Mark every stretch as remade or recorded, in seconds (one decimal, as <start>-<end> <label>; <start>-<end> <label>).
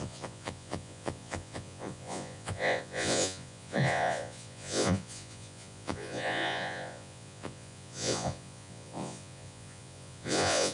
0.0-10.7 remade